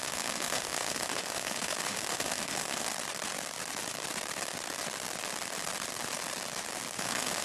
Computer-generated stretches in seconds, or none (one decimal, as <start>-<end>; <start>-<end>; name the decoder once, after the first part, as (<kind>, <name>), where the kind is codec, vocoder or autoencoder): 0.0-2.9 (autoencoder, DAC-VAE); 7.0-7.4